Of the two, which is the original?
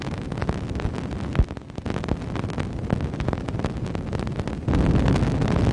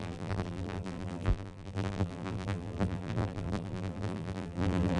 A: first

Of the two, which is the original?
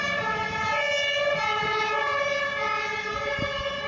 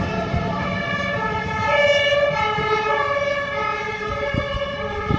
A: first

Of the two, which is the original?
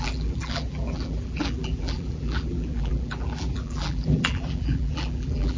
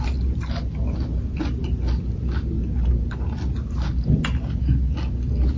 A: second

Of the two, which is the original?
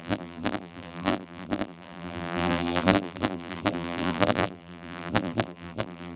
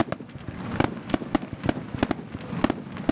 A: second